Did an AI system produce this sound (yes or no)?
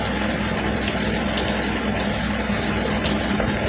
no